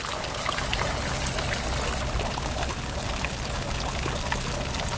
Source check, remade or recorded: recorded